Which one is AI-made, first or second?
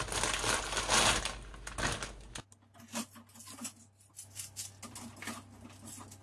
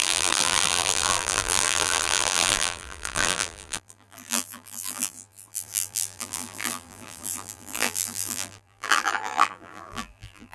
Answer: second